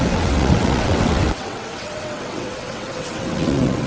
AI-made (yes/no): yes